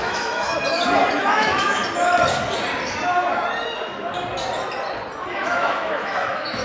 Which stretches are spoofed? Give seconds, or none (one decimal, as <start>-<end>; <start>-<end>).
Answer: 0.0-0.5; 1.2-1.8; 5.3-6.6